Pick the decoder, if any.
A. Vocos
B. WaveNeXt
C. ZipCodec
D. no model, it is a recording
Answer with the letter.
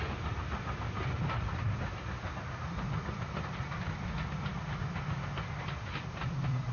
D